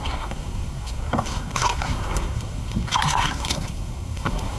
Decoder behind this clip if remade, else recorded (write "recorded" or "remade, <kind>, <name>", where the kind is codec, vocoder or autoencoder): remade, codec, SNAC